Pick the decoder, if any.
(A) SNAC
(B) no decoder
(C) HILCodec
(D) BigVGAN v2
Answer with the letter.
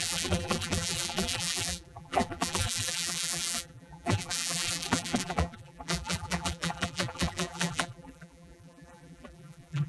D